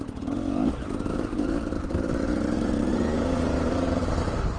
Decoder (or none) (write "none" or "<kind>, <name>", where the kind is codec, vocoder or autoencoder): vocoder, BigVGAN v2